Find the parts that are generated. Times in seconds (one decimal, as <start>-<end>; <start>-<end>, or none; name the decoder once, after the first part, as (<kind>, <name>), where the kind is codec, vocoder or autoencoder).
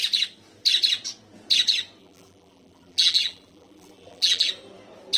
2.0-4.5 (vocoder, BigVGAN v2)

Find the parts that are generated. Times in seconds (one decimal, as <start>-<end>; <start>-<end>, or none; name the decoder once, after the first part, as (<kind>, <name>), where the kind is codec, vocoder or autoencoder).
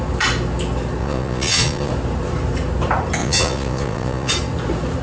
1.0-1.9 (vocoder, Vocos); 3.2-4.3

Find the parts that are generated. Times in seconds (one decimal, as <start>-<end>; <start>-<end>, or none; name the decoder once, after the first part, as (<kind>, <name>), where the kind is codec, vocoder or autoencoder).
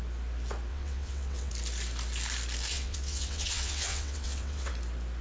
0.7-1.5 (vocoder, WaveNeXt); 2.7-4.7